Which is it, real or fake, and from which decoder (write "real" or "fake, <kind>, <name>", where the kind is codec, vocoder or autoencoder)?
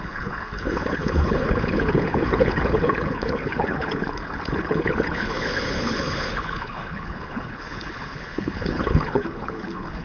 fake, codec, HILCodec